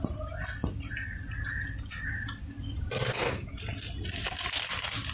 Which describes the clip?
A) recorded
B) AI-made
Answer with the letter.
A